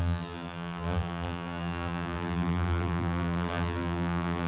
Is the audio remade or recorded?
remade